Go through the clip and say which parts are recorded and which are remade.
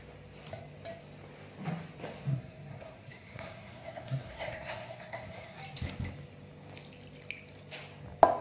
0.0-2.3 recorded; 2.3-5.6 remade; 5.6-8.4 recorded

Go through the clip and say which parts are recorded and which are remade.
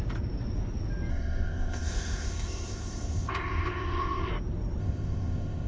0.0-1.1 recorded; 1.1-4.3 remade; 4.3-4.8 recorded; 4.8-5.7 remade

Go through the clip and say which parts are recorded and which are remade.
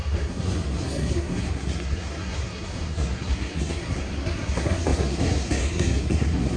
0.0-6.6 remade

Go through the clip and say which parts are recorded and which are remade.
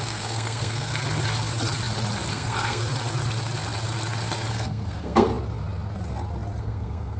0.0-0.9 remade; 0.9-2.3 recorded; 2.3-2.8 remade; 2.8-4.5 recorded; 4.5-5.3 remade; 5.3-6.6 recorded; 6.6-7.2 remade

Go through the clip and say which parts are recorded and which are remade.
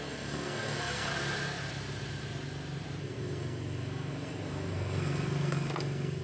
0.0-1.1 remade; 1.1-3.0 recorded; 3.0-6.2 remade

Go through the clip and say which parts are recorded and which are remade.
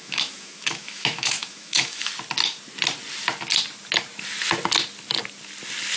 0.0-2.1 remade; 2.1-6.0 recorded